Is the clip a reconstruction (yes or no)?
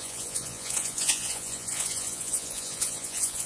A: yes